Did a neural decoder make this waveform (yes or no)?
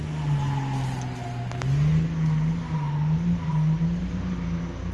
no